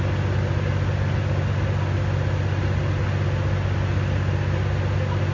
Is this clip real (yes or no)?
yes